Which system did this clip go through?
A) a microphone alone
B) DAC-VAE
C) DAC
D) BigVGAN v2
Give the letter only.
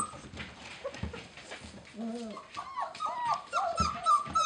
A